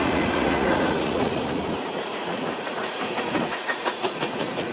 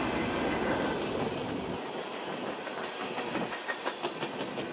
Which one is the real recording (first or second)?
second